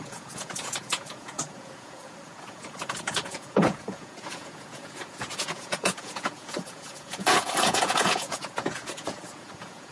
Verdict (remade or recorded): remade